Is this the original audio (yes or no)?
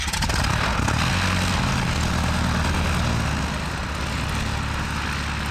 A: yes